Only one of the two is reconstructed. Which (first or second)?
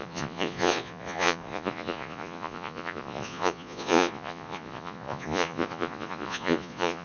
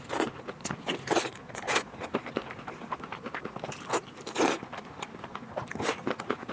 first